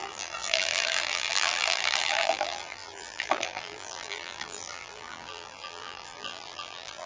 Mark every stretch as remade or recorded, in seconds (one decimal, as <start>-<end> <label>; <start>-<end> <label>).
0.0-7.1 remade